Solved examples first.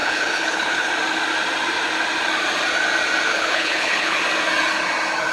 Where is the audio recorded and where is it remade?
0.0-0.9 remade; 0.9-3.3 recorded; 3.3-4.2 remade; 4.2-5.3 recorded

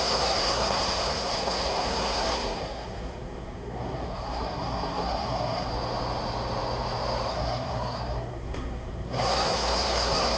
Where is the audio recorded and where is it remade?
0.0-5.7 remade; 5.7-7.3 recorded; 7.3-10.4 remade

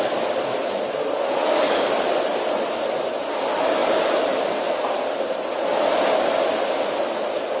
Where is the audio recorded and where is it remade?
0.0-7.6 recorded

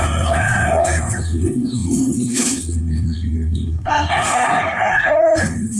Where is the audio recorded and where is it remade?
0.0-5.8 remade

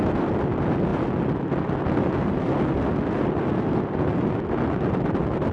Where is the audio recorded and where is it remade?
0.0-5.5 recorded